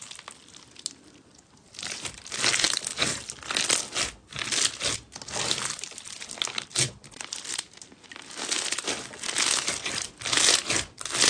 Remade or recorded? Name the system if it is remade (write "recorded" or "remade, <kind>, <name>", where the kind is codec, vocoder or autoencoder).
recorded